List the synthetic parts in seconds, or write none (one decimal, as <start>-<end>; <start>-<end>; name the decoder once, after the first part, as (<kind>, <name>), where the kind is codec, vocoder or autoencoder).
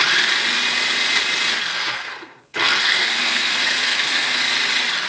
1.7-4.4 (codec, SNAC)